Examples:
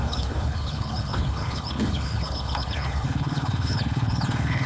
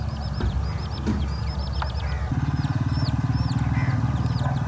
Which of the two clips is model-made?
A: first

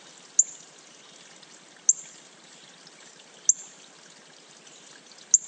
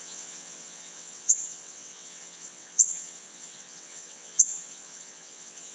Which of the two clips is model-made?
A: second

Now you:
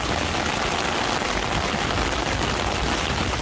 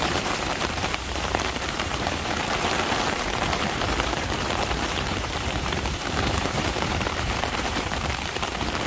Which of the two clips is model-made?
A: second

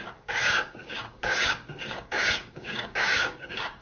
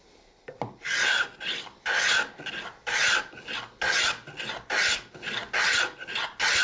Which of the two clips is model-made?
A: first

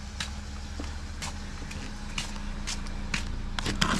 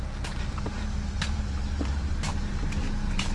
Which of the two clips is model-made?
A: second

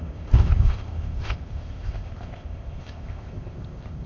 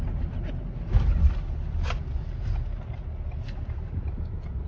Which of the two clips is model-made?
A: first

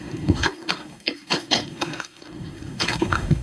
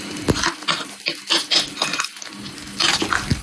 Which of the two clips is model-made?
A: first